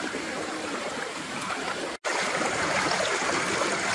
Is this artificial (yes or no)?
no